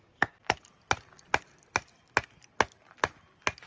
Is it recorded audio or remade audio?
recorded